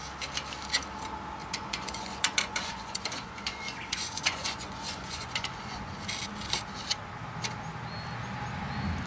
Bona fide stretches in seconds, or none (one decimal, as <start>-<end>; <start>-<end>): 0.0-1.4; 5.9-9.1